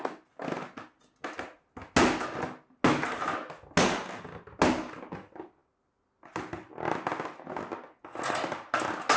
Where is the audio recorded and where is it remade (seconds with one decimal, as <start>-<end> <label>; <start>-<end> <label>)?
0.0-9.2 recorded